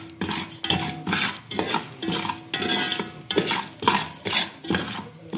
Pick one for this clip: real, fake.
real